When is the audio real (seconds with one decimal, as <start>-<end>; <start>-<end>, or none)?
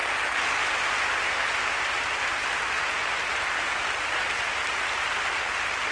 0.0-5.9